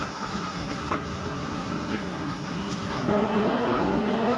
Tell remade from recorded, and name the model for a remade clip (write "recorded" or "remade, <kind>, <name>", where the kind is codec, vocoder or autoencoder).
remade, codec, SNAC